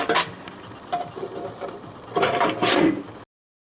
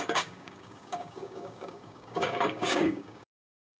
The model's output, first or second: second